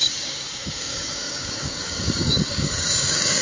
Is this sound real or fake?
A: fake